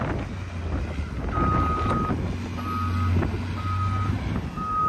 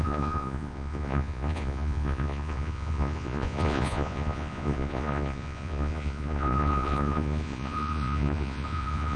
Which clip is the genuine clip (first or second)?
first